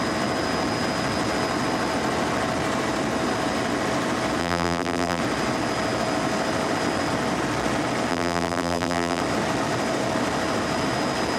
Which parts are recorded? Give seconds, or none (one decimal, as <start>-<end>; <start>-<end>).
0.0-4.4; 5.2-8.1; 9.2-11.4